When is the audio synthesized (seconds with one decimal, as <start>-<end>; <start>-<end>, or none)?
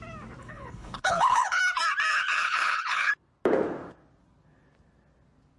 0.4-1.6; 2.1-3.1